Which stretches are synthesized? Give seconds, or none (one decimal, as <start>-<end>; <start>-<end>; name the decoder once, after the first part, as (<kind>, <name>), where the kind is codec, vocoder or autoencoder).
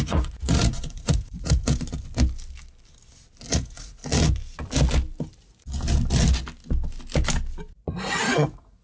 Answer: 0.0-1.7 (vocoder, Vocos); 3.5-4.0; 7.9-8.8